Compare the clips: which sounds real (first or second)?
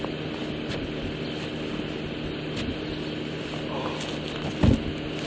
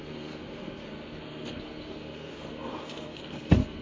first